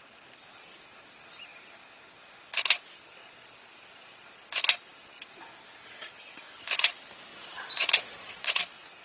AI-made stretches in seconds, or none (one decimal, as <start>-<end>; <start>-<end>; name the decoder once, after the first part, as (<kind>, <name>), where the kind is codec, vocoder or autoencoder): 7.3-8.6 (vocoder, Vocos)